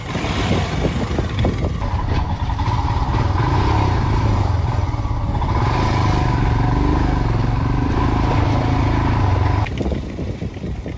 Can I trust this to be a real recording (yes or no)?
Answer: yes